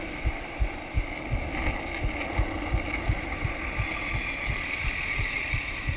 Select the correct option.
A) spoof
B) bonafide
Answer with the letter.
B